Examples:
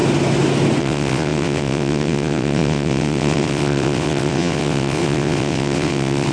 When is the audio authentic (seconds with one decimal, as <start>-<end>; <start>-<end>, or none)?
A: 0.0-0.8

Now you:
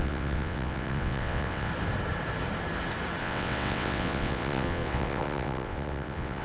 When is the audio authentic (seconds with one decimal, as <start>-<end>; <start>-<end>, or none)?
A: 1.7-3.2

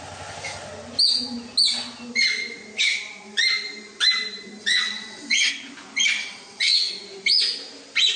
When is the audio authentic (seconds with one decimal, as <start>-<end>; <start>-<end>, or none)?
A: 0.0-4.6; 5.5-6.2; 6.9-8.2

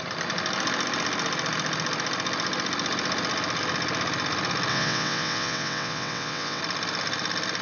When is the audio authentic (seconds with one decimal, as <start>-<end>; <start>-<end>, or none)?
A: 0.0-4.7; 6.6-7.6

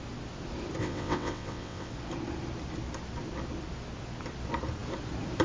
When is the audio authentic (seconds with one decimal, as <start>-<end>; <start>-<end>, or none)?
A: 0.0-0.8; 1.9-5.4